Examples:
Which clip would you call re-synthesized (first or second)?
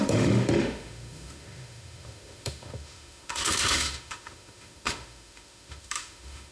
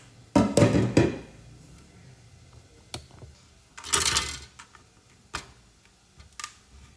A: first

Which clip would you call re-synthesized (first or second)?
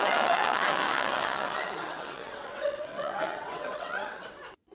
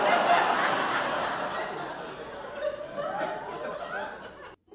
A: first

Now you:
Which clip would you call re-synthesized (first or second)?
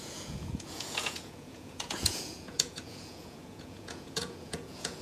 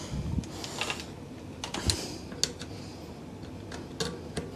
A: first